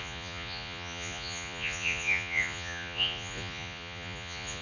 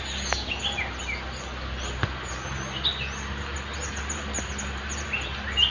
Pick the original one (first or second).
second